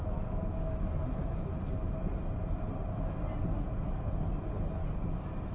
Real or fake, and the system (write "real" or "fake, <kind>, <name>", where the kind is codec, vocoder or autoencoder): real